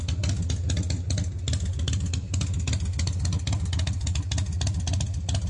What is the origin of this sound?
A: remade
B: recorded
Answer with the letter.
B